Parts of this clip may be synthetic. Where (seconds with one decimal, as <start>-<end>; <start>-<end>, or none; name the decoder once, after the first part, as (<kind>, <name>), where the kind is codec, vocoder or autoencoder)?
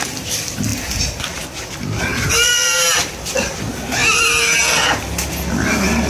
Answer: none